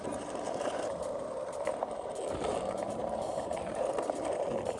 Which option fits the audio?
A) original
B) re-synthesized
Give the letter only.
B